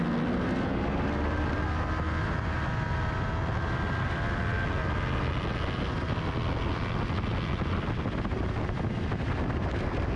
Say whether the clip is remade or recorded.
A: recorded